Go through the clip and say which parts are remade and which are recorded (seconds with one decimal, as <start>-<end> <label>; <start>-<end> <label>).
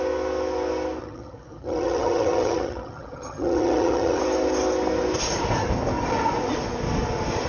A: 0.0-1.0 recorded; 1.0-4.2 remade; 4.2-7.5 recorded